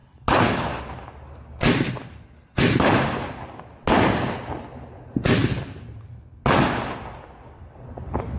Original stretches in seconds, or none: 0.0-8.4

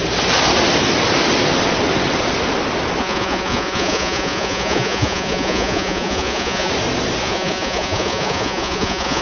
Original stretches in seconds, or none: 0.0-3.0; 6.7-7.2